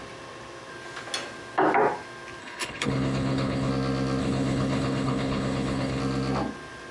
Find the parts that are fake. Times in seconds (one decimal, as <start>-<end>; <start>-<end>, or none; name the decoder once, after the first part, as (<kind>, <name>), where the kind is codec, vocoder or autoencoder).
2.4-3.7 (codec, HILCodec); 4.2-6.0